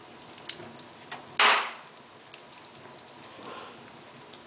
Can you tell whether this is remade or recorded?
recorded